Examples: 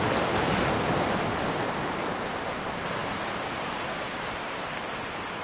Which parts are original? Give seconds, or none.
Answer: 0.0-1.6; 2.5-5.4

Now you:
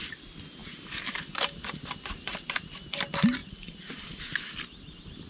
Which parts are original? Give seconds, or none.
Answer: 0.0-0.6; 2.7-3.4; 4.2-5.3

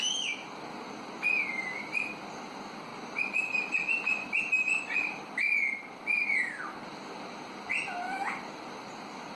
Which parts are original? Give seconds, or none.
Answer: 0.0-2.9; 7.7-9.4

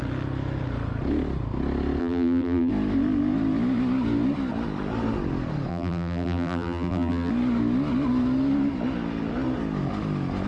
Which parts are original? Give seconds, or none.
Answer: 0.0-2.0; 2.7-5.7; 7.3-10.5

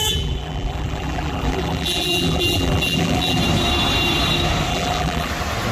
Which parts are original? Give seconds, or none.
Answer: 3.4-4.7; 5.3-5.7